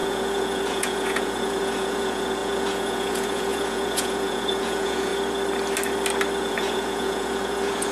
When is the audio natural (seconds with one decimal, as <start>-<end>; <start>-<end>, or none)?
5.1-6.4